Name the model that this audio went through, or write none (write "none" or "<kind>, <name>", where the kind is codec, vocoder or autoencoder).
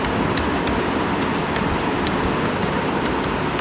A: none